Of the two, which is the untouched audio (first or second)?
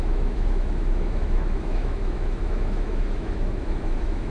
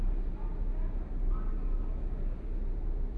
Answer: second